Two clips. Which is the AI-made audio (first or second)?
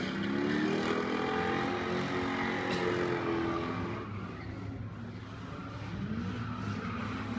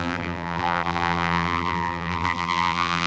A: second